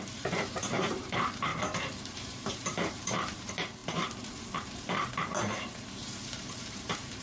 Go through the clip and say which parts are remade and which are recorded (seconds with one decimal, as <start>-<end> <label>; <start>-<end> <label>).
0.0-7.2 remade